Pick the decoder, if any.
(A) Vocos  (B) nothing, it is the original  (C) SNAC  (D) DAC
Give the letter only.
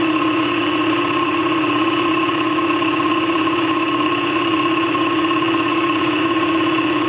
A